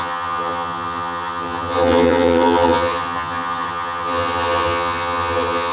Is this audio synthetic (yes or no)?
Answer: yes